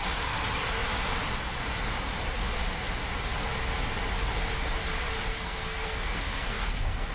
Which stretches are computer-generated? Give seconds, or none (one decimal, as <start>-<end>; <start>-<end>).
5.3-7.1